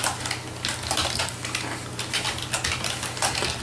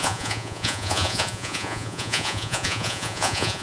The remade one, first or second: second